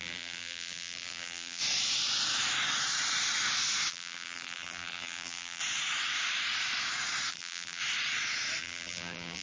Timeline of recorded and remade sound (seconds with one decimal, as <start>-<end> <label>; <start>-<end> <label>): 0.0-1.6 remade; 1.6-3.9 recorded; 3.9-5.6 remade; 5.6-7.3 recorded; 7.3-7.8 remade; 7.8-8.6 recorded; 8.6-9.4 remade